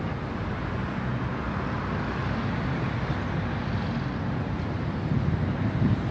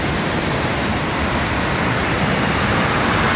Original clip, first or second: first